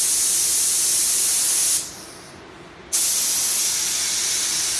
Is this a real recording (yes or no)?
yes